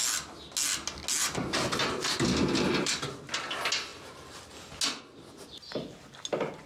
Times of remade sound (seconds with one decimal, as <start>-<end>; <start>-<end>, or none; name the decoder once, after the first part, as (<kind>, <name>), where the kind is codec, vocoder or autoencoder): 1.2-3.3 (vocoder, BigVGAN v2)